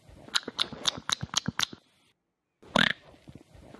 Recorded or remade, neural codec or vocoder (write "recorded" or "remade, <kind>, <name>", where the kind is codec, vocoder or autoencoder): recorded